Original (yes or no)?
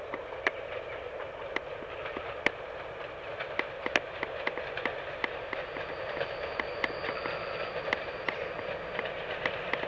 yes